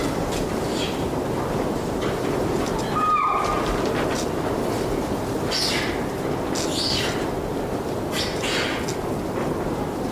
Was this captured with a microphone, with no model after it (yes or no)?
yes